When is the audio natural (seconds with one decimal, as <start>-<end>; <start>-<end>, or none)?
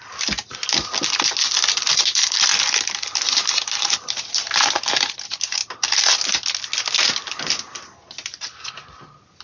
0.0-9.4